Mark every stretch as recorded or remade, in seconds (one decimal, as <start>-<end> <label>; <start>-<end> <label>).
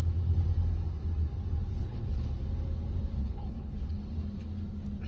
0.0-1.7 recorded; 1.7-2.3 remade; 2.3-3.2 recorded; 3.2-4.0 remade; 4.0-5.1 recorded